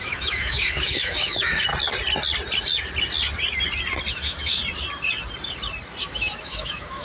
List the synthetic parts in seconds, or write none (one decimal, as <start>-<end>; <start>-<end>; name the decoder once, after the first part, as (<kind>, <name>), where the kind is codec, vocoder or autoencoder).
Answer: 0.0-1.7 (autoencoder, DAC-VAE); 4.1-4.6; 6.0-7.0